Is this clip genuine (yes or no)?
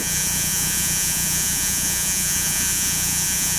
no